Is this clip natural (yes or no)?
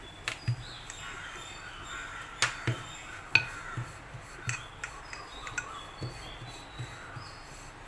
yes